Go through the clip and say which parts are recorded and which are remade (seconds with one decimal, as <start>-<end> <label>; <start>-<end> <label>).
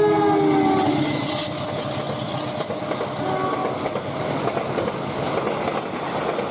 0.0-3.6 recorded; 3.6-5.3 remade; 5.3-6.5 recorded